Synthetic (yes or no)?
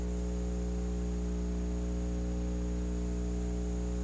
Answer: no